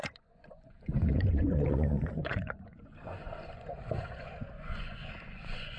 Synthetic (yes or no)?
yes